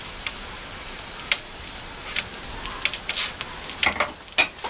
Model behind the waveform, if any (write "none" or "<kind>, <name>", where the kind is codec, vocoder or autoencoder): none